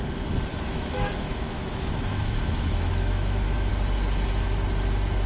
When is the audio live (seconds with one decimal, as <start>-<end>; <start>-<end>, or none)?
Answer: 0.0-0.5; 3.7-5.3